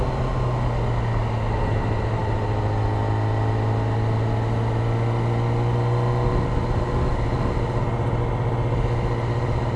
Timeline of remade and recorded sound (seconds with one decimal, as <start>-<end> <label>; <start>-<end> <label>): 0.0-9.8 recorded